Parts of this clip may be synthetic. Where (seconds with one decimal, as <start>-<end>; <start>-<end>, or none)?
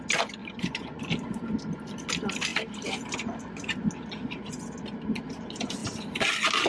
0.4-1.0